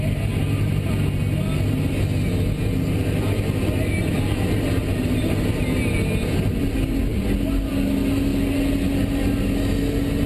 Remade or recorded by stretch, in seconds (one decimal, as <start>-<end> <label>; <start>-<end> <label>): 0.0-10.3 recorded